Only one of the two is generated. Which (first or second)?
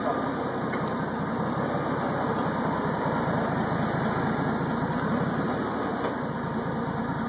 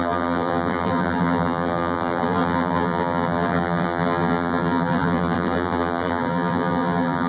second